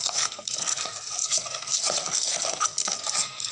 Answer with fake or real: fake